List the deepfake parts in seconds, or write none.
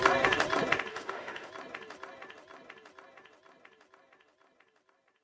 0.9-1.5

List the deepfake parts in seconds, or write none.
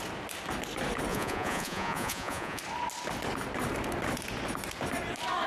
1.1-2.6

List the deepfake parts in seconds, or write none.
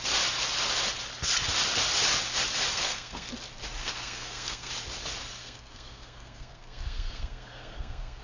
2.7-3.3; 3.8-4.7; 5.4-8.2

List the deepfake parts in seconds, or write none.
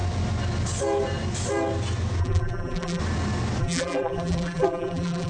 2.2-3.0; 3.6-5.3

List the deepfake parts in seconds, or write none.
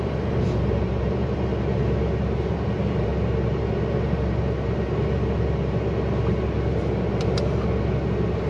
0.0-1.5; 2.4-3.1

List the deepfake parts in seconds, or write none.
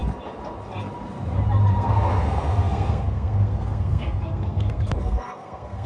1.7-5.9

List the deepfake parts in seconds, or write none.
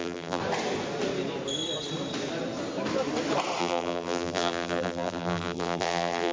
0.0-0.4; 3.6-6.3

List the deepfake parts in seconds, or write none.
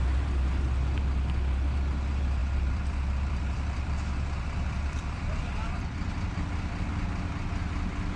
2.4-6.4